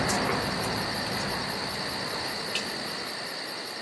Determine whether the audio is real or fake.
real